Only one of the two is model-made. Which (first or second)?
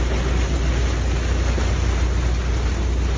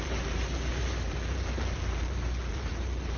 second